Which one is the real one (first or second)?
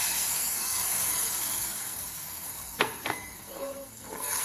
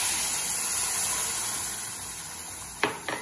second